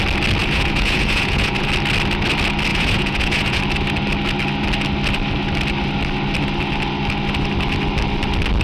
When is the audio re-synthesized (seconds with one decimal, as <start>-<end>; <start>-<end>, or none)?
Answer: 0.4-1.7; 2.7-3.6